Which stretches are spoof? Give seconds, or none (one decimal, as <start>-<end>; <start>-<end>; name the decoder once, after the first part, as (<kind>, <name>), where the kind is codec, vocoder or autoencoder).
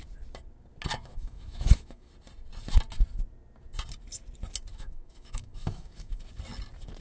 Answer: 0.9-2.1 (autoencoder, DAC-VAE); 4.7-6.2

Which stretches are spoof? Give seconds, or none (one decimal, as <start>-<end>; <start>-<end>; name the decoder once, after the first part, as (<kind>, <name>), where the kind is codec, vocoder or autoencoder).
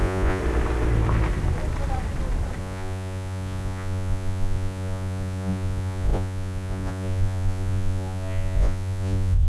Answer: 0.0-0.4 (vocoder, Vocos); 2.6-9.5